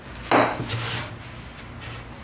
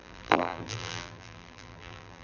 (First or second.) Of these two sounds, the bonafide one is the first